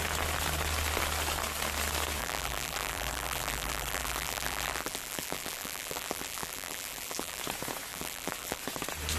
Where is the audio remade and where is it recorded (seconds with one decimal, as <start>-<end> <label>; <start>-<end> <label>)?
0.0-2.2 recorded; 2.2-7.4 remade; 7.4-7.9 recorded; 7.9-8.6 remade; 8.6-9.2 recorded